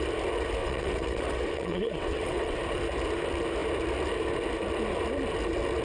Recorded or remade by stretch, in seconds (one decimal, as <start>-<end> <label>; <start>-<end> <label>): 0.0-0.6 recorded; 0.6-2.6 remade; 2.6-5.8 recorded